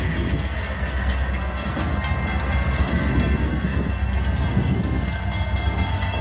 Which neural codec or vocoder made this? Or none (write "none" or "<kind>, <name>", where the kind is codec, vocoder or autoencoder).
codec, SNAC